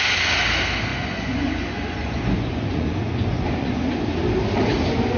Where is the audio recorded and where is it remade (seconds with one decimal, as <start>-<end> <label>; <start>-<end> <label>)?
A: 0.0-0.9 recorded; 0.9-4.0 remade; 4.0-5.2 recorded